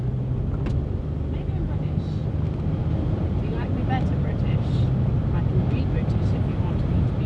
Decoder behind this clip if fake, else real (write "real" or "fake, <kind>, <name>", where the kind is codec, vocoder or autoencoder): real